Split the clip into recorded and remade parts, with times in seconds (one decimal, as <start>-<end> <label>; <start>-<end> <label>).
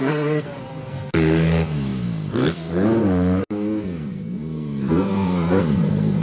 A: 0.0-6.2 remade